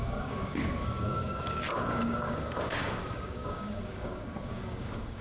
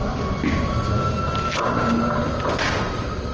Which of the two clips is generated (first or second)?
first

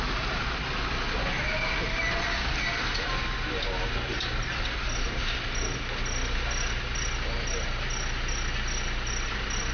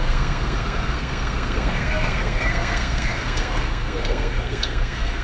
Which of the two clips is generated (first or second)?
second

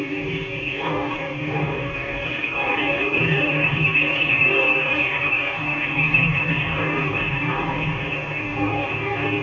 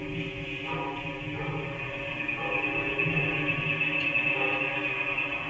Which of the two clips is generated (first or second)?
first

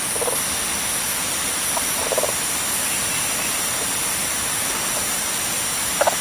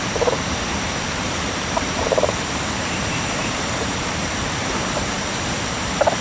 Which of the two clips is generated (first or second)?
second